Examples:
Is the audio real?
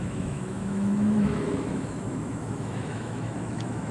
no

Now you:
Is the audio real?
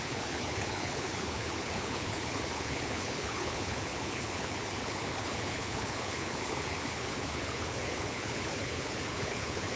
no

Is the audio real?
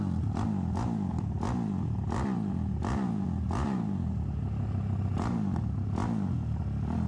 yes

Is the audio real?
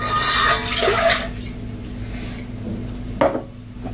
yes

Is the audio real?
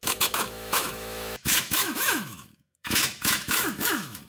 no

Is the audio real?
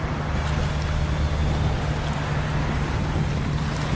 yes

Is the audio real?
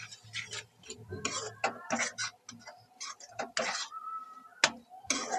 yes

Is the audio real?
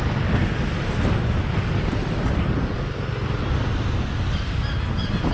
yes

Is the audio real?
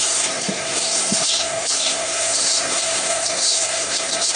no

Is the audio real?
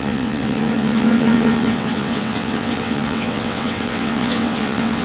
no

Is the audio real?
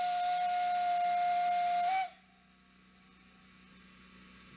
yes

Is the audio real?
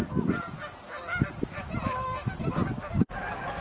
yes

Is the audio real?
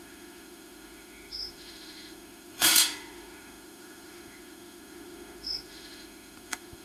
no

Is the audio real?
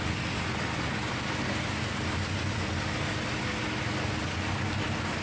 yes